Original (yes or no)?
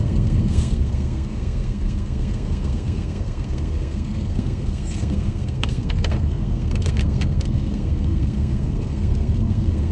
no